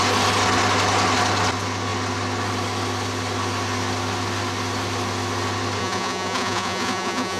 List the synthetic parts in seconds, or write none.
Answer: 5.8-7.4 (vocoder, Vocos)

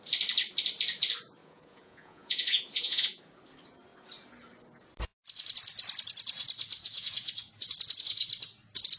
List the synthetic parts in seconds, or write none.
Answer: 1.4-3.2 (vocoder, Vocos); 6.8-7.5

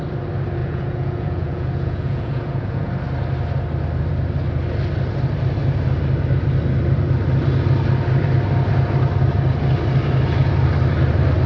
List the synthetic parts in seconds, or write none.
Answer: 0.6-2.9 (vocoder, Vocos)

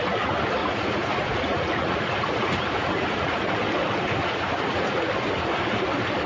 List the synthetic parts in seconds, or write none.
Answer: 0.6-3.5 (vocoder, Vocos); 4.2-5.1